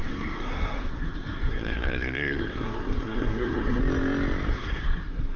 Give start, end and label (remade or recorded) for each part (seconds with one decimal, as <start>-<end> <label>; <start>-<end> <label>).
0.0-3.8 remade; 3.8-4.5 recorded; 4.5-5.4 remade